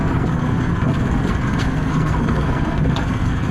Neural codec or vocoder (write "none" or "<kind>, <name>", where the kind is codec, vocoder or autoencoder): codec, SNAC